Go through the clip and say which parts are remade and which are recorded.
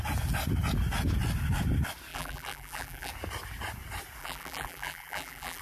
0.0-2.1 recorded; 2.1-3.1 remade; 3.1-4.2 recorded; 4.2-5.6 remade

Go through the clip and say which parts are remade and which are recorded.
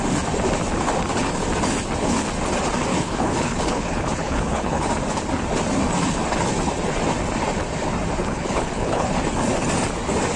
0.0-2.9 recorded; 2.9-4.9 remade; 4.9-8.2 recorded; 8.2-9.1 remade; 9.1-10.4 recorded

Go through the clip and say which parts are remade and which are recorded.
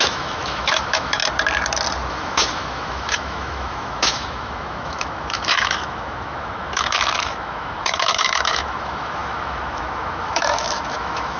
0.0-1.2 remade; 1.2-2.1 recorded; 2.1-11.4 remade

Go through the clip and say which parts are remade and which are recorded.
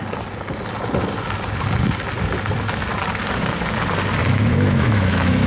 0.0-4.2 recorded; 4.2-5.5 remade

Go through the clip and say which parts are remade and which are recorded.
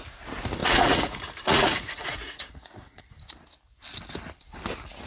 0.0-0.6 recorded; 0.6-3.0 remade; 3.0-5.1 recorded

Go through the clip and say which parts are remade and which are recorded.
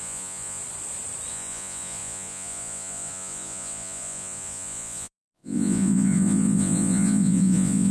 0.0-0.6 remade; 0.6-1.3 recorded; 1.3-7.9 remade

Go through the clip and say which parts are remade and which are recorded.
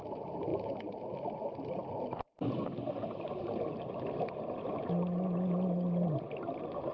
0.0-6.9 recorded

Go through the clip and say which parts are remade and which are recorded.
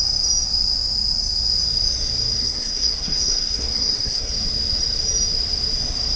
0.0-2.4 recorded; 2.4-4.3 remade; 4.3-6.2 recorded